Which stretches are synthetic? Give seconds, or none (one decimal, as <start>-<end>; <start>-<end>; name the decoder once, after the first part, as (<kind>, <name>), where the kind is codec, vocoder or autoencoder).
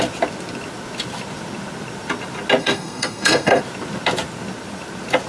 2.6-3.6 (codec, SNAC)